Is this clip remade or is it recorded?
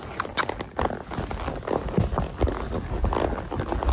recorded